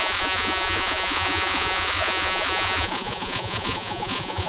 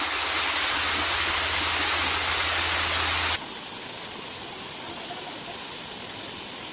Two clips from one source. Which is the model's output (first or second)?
first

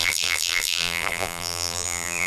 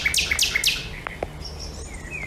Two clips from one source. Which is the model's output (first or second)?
first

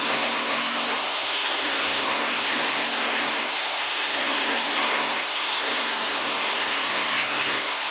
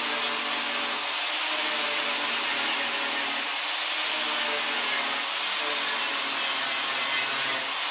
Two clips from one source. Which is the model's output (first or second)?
first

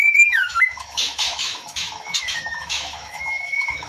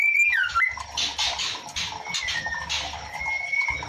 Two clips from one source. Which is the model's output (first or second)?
first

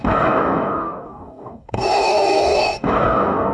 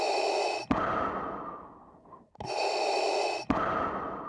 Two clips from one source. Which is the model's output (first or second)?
first